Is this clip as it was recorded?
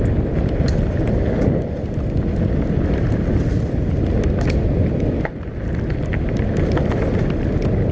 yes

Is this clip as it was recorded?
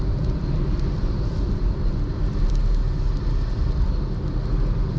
yes